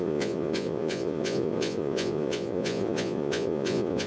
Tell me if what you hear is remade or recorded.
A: remade